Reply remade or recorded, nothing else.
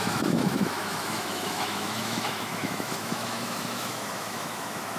remade